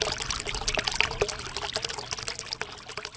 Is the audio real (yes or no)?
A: yes